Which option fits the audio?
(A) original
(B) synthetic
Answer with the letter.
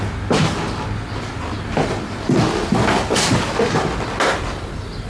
A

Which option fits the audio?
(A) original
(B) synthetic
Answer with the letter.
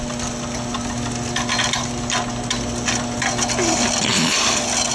A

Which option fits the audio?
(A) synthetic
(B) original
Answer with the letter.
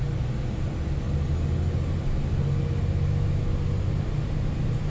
B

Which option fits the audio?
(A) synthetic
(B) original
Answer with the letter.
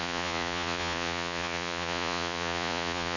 A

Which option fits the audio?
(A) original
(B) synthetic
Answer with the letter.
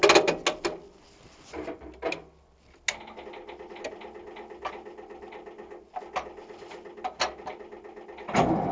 A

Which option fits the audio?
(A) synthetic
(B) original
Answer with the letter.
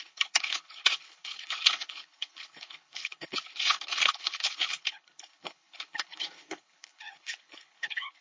A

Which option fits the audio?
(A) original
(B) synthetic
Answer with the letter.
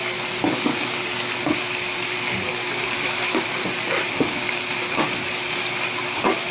A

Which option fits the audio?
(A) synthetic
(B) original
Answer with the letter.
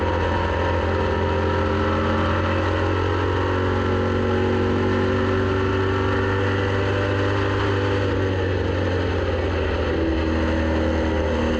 B